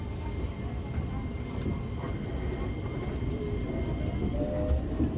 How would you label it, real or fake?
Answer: real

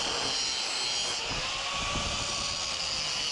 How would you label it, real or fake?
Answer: real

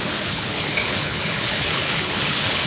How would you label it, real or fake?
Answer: fake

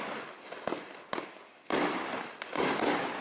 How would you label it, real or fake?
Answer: real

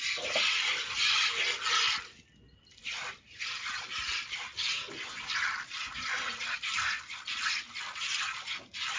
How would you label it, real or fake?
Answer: fake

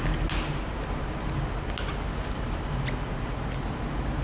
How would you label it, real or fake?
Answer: real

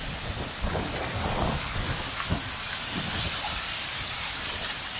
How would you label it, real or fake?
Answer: real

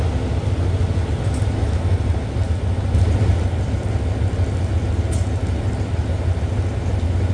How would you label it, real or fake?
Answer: real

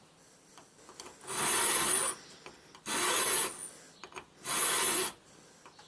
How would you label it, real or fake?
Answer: real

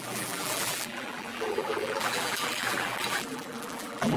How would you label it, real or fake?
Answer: fake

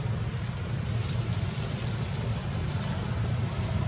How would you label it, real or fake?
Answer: real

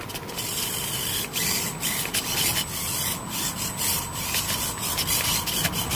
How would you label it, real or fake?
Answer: real